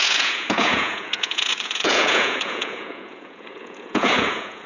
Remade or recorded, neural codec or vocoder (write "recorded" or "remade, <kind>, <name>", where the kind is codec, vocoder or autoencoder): remade, vocoder, Vocos